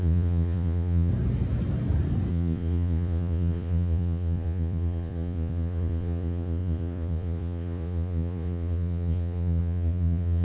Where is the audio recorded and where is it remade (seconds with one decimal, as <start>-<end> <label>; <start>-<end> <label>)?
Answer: 0.0-1.1 remade; 1.1-2.3 recorded; 2.3-10.4 remade